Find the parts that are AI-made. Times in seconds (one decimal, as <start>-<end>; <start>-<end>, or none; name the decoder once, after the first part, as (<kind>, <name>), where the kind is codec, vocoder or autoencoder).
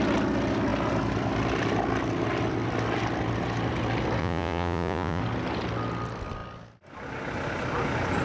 4.2-5.2 (vocoder, Vocos)